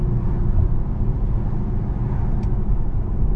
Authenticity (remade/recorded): recorded